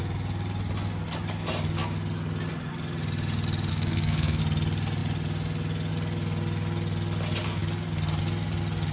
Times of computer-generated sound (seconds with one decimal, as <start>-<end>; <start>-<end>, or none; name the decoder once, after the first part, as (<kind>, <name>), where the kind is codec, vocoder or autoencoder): 3.7-4.4 (codec, SNAC)